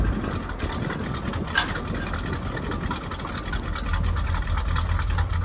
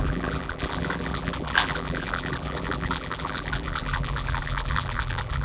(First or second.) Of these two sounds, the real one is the first